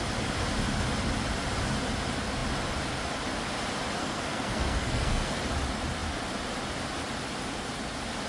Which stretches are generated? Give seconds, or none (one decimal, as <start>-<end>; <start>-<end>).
4.0-5.4